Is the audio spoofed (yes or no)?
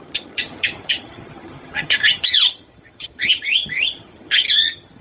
yes